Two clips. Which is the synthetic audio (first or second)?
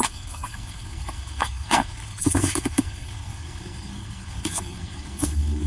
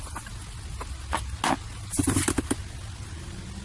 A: first